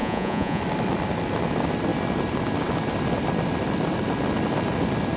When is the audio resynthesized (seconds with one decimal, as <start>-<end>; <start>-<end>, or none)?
0.0-0.6

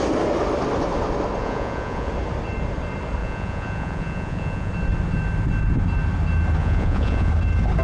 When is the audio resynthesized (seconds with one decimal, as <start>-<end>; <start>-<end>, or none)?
1.4-2.1; 3.2-4.7; 6.6-7.3

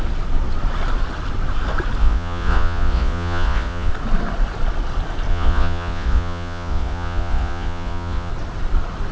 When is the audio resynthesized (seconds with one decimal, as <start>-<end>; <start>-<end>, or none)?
2.0-3.9; 5.3-8.3

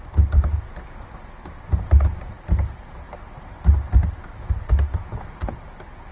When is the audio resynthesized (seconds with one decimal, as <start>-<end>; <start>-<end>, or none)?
none

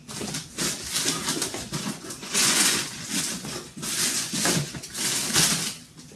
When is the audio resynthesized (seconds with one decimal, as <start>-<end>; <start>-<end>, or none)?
1.3-5.0

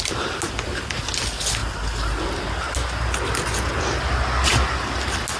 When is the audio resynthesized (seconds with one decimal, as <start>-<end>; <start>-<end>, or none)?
none